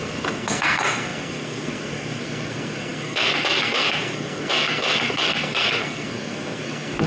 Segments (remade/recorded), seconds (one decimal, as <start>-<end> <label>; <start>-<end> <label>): 0.0-7.1 remade